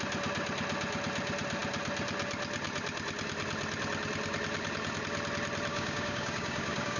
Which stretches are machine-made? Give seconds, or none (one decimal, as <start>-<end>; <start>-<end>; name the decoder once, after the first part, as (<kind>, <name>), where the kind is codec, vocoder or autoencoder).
5.7-7.0 (codec, DAC)